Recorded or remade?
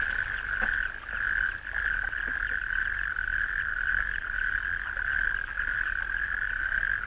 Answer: recorded